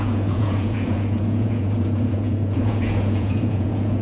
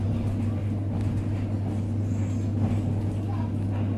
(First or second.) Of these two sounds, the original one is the second